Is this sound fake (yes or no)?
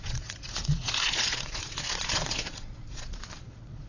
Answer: yes